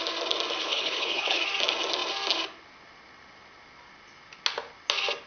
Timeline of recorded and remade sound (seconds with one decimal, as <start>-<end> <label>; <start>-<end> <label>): 0.0-0.6 recorded; 0.6-1.4 remade; 1.4-5.3 recorded